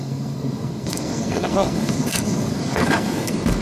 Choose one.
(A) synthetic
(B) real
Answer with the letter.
A